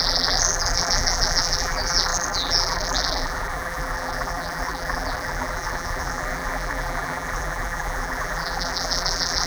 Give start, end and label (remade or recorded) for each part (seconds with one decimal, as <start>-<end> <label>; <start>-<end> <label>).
0.0-9.5 remade